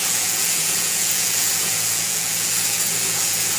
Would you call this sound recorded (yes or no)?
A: no